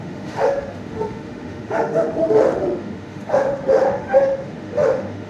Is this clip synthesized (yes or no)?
yes